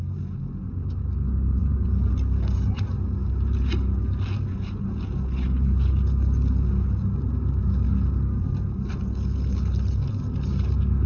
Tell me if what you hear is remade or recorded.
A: recorded